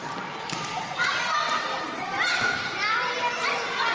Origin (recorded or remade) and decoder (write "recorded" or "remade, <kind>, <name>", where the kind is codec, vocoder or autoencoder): recorded